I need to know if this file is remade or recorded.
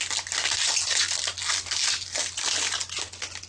recorded